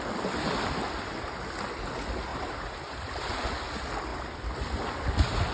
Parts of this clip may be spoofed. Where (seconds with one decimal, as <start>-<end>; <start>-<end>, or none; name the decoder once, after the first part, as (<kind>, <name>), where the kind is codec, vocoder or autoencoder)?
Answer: 2.3-3.3 (vocoder, BigVGAN v2)